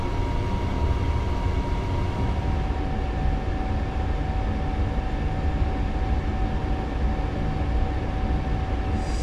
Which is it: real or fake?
real